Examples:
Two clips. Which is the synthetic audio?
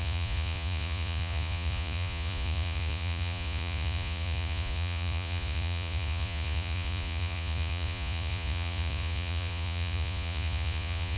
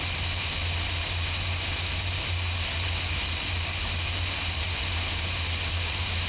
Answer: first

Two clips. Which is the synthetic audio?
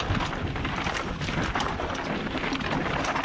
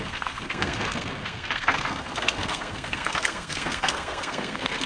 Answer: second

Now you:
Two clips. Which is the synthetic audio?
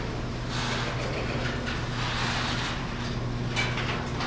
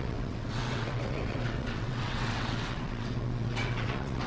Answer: second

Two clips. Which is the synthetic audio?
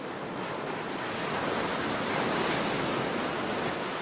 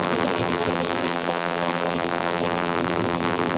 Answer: second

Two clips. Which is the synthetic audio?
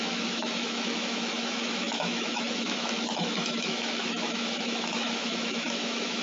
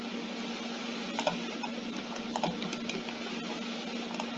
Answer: first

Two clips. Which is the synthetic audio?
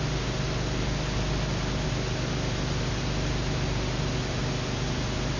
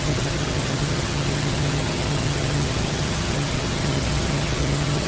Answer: second